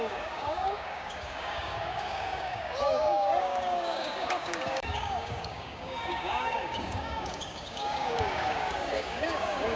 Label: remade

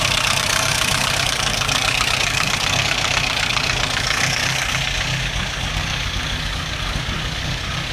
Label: remade